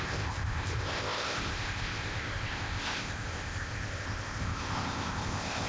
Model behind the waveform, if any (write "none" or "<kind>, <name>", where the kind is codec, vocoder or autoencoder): codec, ZipCodec